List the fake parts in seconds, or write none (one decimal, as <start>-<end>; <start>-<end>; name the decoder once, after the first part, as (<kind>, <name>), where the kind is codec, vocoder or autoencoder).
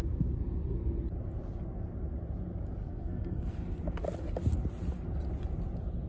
2.8-3.8 (codec, SNAC)